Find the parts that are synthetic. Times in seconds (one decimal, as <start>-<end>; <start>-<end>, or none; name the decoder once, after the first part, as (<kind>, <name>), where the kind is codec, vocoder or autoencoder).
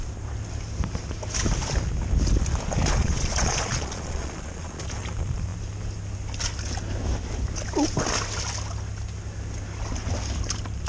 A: 3.0-4.8 (vocoder, Vocos)